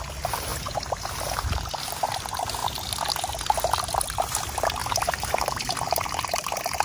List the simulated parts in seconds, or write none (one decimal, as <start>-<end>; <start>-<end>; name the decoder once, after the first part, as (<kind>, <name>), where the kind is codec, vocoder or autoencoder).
0.5-1.7 (vocoder, BigVGAN v2); 4.8-6.8